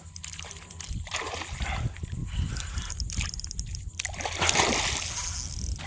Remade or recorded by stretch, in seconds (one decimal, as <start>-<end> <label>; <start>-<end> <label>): 0.0-5.9 recorded